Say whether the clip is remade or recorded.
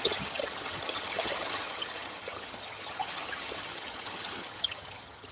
remade